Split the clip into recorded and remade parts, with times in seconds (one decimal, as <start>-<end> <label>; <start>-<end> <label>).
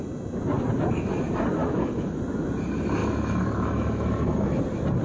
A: 0.0-1.6 recorded; 1.6-2.2 remade; 2.2-3.0 recorded; 3.0-4.6 remade; 4.6-5.0 recorded